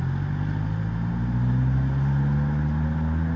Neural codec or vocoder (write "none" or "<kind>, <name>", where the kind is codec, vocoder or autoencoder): none